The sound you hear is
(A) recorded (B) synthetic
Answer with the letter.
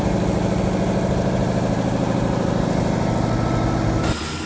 A